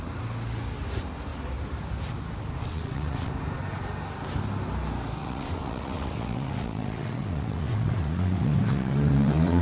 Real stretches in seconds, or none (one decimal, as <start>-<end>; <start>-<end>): 0.0-2.6; 3.3-5.2